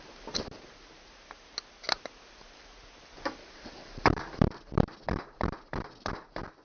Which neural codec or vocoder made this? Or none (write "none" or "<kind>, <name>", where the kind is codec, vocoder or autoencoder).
none